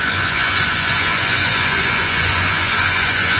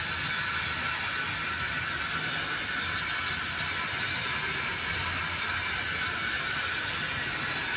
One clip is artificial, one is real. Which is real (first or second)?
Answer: second